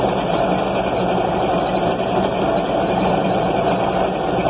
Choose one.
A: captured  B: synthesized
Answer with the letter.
A